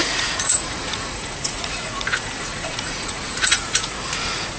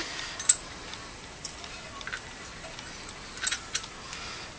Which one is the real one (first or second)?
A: second